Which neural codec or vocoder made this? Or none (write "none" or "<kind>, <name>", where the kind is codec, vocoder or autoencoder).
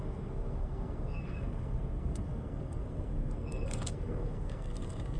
codec, SNAC